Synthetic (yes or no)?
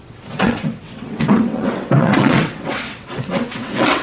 yes